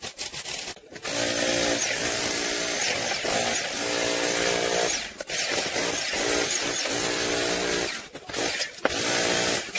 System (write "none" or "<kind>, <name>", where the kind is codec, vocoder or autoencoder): none